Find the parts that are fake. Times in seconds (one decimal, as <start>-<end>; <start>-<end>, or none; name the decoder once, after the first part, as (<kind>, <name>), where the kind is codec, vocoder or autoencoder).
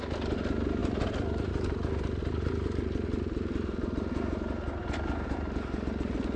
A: 0.8-1.5 (vocoder, BigVGAN v2); 4.8-5.7